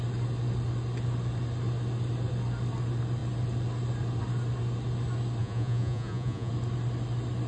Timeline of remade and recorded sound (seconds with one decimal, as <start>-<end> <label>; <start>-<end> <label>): 0.0-5.4 recorded; 5.4-6.5 remade; 6.5-7.5 recorded